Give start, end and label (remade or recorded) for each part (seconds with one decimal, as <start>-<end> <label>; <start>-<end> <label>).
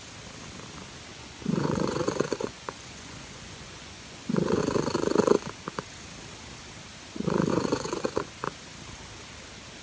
0.0-1.1 recorded; 1.1-4.6 remade; 4.6-7.5 recorded; 7.5-8.3 remade; 8.3-9.8 recorded